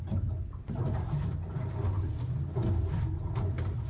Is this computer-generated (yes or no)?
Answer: no